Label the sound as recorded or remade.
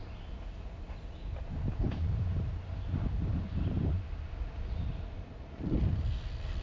recorded